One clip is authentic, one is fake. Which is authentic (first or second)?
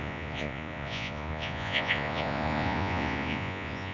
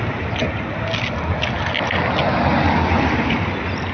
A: second